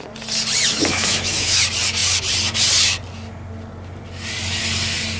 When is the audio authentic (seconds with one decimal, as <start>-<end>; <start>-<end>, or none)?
0.0-0.7; 1.6-5.2